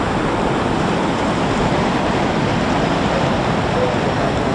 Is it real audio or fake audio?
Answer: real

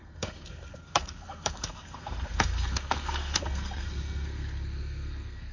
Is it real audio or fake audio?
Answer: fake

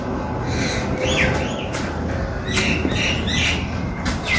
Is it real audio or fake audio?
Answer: real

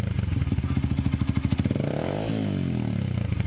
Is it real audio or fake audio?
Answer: real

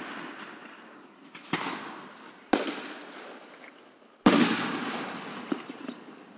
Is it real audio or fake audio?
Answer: real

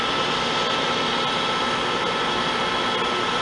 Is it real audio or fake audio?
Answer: real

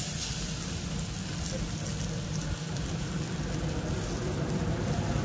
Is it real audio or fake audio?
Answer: real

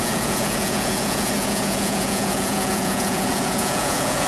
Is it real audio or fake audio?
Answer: fake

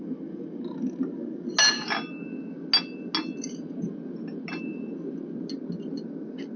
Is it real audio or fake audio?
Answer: real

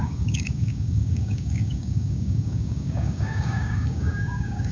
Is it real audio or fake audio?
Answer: fake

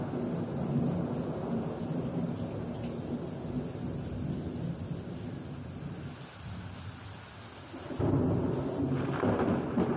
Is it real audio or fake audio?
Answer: real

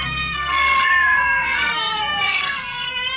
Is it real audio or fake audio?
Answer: fake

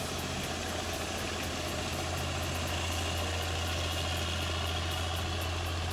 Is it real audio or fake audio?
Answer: real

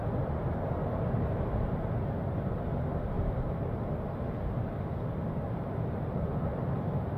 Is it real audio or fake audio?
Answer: fake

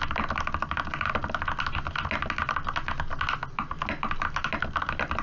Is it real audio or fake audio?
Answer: real